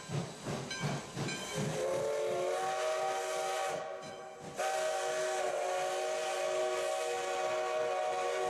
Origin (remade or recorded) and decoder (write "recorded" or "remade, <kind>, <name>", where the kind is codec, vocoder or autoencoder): recorded